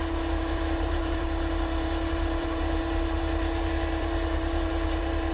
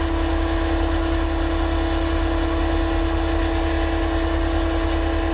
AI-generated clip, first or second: first